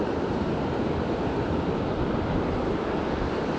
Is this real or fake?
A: fake